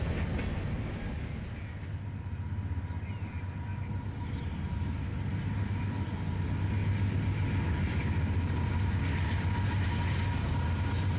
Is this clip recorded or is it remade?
recorded